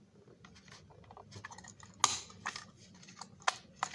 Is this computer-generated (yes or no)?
no